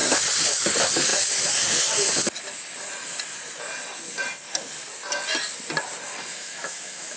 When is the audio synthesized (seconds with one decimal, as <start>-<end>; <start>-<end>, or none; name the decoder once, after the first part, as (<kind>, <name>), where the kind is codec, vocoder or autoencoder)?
6.3-7.2 (autoencoder, DAC-VAE)